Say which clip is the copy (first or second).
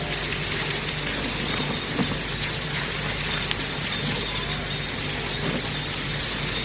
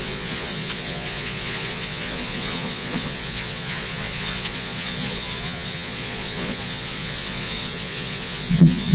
second